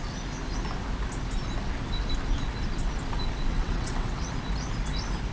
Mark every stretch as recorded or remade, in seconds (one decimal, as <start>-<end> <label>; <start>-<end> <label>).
0.0-3.5 recorded; 3.5-4.3 remade; 4.3-5.3 recorded